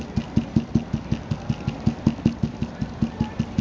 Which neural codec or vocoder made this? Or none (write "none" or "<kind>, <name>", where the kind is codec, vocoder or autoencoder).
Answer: none